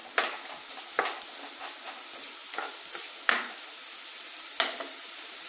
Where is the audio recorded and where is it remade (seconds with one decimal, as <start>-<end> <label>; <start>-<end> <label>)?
0.0-5.5 recorded